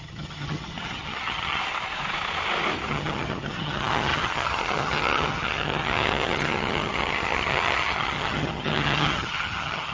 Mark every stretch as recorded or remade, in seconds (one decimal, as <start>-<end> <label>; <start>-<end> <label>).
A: 0.0-1.6 remade; 1.6-2.9 recorded; 2.9-9.9 remade